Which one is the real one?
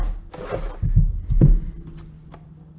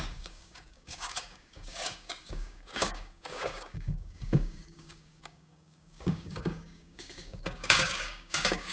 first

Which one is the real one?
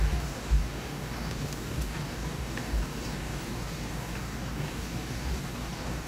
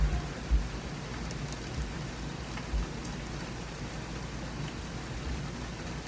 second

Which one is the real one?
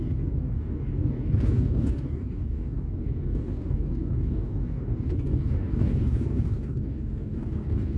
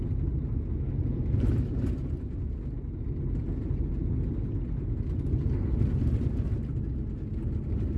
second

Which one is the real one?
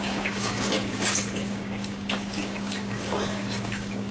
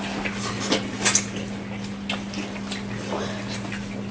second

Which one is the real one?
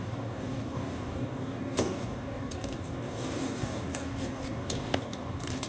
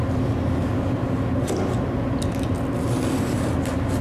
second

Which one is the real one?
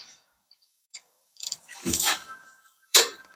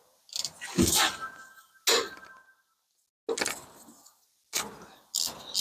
second